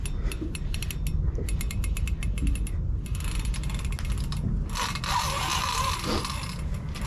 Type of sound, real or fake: real